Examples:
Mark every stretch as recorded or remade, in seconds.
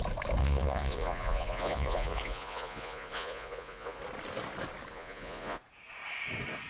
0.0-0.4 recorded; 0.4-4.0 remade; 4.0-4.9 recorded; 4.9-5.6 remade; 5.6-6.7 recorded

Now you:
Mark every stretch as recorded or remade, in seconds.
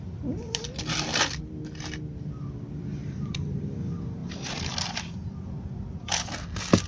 0.0-3.0 recorded; 3.0-3.6 remade; 3.6-4.2 recorded; 4.2-5.0 remade; 5.0-6.9 recorded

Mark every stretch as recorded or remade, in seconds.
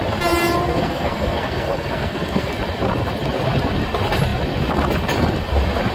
0.0-0.7 recorded; 0.7-2.5 remade; 2.5-5.9 recorded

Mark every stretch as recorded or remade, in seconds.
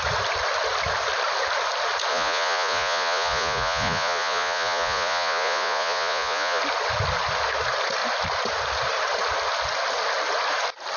0.0-2.1 recorded; 2.1-6.6 remade; 6.6-11.0 recorded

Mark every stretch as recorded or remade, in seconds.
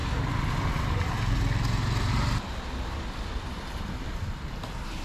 0.0-3.0 recorded; 3.0-5.0 remade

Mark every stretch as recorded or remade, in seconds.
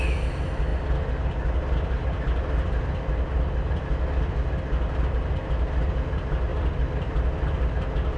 0.0-6.5 recorded; 6.5-7.7 remade; 7.7-8.2 recorded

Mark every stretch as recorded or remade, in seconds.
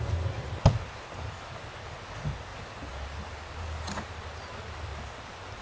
0.0-5.6 recorded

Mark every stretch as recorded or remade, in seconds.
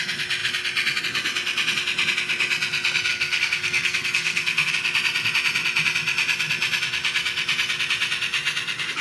0.0-3.1 recorded; 3.1-4.7 remade; 4.7-9.0 recorded